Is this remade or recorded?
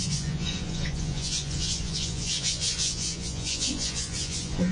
remade